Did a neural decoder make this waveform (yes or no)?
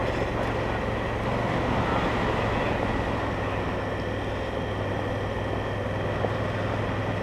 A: no